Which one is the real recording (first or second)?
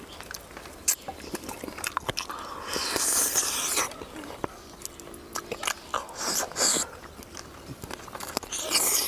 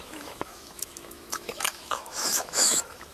first